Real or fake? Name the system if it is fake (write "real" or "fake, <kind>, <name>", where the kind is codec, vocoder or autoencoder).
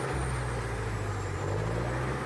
real